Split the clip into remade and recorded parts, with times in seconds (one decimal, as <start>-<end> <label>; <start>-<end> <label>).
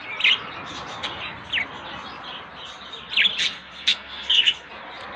0.0-3.5 recorded; 3.5-4.7 remade; 4.7-5.2 recorded